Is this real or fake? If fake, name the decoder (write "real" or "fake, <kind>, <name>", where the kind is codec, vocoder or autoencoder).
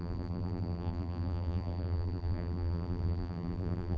fake, vocoder, BigVGAN v2